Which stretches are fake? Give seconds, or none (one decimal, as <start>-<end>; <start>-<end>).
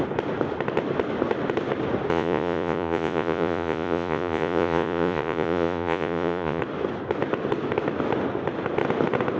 2.1-6.6